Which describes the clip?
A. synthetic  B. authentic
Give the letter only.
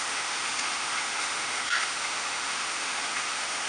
A